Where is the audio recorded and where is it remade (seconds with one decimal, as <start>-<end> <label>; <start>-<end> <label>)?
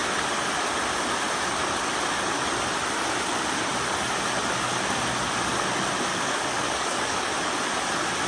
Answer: 0.0-6.1 recorded; 6.1-7.3 remade; 7.3-8.3 recorded